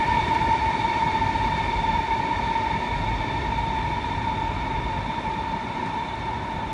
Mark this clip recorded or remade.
remade